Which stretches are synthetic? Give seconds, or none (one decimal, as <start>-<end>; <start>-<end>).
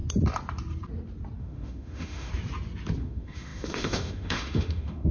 1.4-2.3; 3.0-5.1